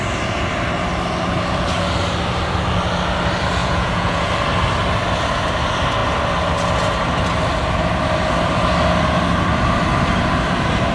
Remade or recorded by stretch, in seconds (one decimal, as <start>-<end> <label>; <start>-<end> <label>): 0.0-3.6 recorded; 3.6-4.3 remade; 4.3-10.9 recorded